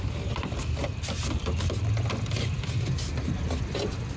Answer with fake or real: fake